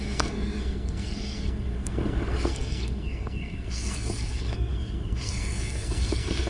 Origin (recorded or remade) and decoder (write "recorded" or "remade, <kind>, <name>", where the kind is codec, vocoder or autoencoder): remade, codec, SNAC